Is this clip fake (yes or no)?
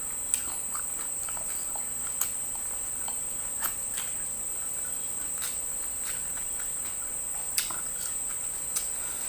no